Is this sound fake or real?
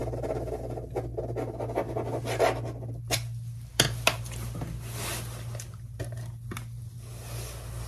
real